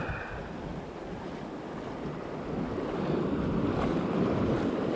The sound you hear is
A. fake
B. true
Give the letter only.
B